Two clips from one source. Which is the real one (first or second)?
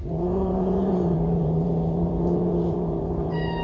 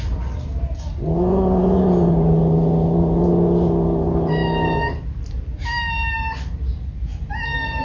second